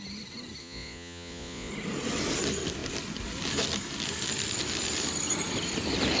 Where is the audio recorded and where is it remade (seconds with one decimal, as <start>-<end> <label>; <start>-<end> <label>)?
0.0-0.6 recorded; 0.6-1.7 remade; 1.7-6.2 recorded